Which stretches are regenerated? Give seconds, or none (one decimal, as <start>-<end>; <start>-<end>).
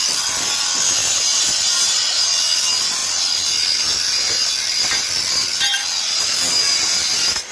1.0-2.3